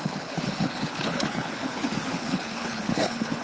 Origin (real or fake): fake